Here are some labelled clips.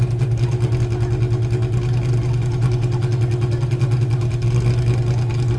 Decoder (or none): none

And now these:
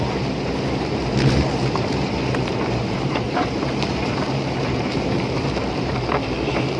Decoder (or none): vocoder, BigVGAN v2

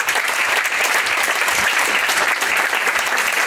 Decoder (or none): vocoder, BigVGAN v2